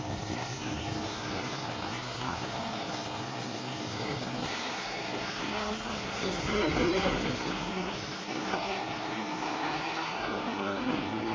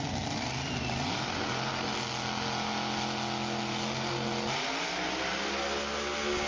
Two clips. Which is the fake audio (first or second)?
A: first